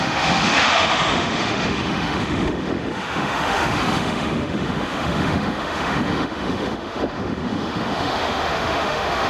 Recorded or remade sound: remade